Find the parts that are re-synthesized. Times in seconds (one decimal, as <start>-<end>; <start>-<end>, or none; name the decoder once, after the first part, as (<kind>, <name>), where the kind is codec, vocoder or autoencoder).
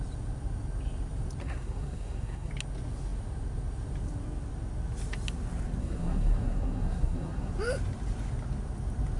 1.4-2.5 (codec, SNAC); 5.8-7.5